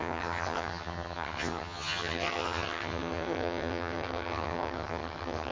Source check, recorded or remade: remade